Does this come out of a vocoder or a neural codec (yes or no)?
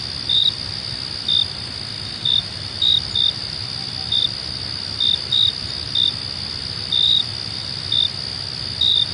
no